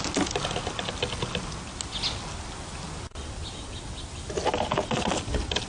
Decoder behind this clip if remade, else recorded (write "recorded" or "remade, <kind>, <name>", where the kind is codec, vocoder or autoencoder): recorded